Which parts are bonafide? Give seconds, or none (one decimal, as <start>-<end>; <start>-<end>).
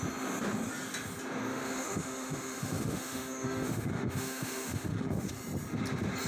0.0-1.5; 5.3-6.3